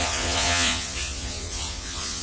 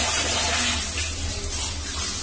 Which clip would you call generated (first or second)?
first